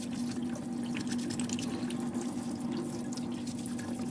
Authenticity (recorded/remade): recorded